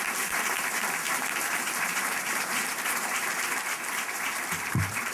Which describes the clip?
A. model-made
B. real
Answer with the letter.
A